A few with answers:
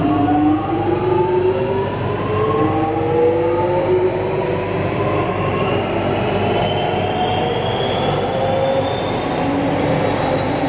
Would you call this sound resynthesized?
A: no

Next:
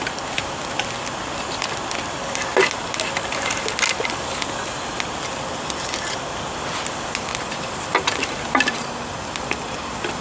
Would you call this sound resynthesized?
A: no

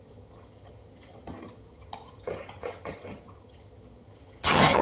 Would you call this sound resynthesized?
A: yes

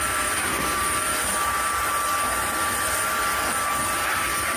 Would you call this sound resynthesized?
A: no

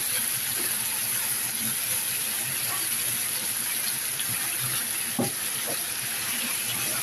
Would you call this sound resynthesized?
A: no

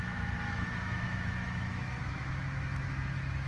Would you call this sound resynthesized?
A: yes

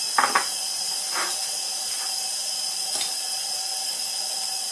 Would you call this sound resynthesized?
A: no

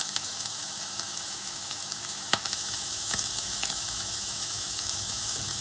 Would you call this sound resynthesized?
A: yes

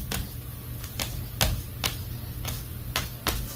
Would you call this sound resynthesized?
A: no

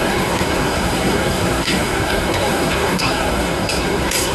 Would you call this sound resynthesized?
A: yes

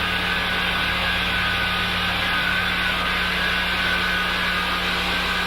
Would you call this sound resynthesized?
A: no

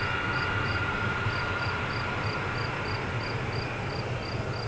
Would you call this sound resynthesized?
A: no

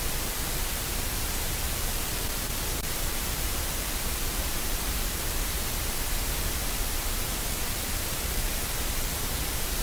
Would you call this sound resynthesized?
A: yes